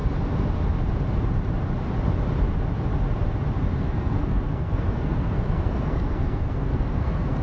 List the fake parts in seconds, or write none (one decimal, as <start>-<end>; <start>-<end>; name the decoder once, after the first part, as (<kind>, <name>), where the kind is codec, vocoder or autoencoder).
3.7-7.4 (codec, SNAC)